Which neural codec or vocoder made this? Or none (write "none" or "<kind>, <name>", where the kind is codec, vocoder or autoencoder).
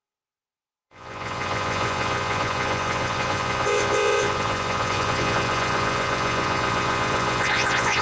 vocoder, Vocos